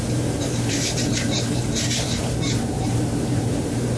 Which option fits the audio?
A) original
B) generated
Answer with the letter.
B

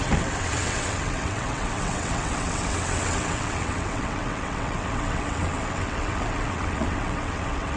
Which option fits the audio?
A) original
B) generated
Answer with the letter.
B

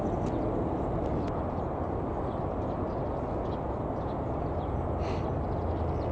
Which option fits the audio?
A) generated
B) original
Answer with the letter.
B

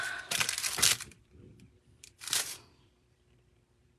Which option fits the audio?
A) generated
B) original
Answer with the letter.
A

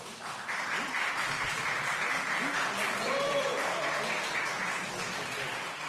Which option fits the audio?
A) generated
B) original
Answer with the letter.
B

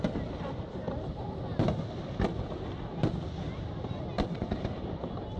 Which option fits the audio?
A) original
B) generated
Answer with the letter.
A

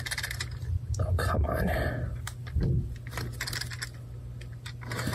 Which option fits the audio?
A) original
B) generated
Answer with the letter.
A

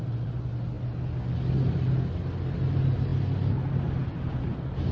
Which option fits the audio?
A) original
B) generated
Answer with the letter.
A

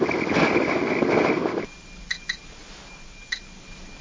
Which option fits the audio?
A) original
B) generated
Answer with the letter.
A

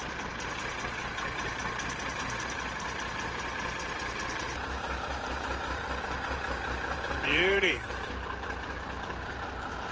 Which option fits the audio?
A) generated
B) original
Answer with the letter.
A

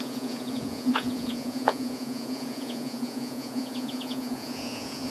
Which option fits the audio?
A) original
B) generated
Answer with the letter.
B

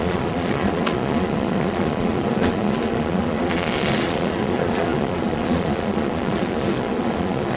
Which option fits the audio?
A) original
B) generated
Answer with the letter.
B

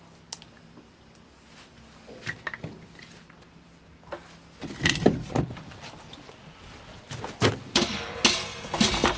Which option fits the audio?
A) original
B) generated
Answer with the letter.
A